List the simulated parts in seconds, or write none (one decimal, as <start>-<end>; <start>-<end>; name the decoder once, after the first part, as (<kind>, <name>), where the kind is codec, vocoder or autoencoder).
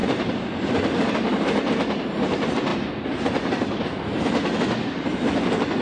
0.0-1.1 (vocoder, BigVGAN v2); 2.7-4.2